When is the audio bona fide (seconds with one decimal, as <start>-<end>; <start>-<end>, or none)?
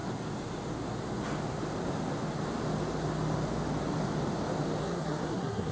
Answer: 0.0-4.8